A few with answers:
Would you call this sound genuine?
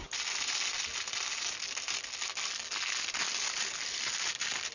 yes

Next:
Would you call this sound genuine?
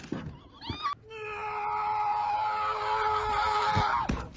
yes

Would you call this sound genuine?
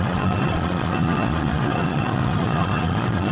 no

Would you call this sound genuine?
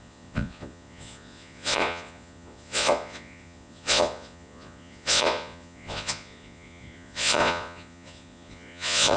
no